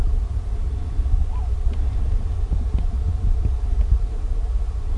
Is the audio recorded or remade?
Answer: recorded